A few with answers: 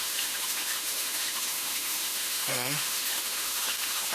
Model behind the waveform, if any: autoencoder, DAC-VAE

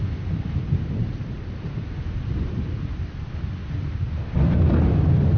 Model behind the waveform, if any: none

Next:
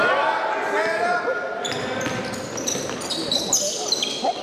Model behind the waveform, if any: none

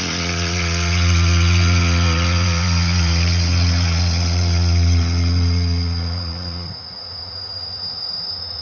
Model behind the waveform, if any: vocoder, Vocos